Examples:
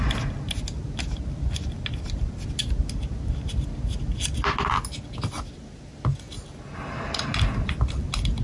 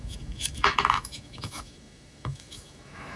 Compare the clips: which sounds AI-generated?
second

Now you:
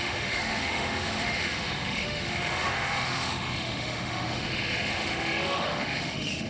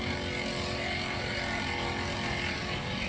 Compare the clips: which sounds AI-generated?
first